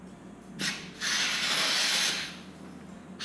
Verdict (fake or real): real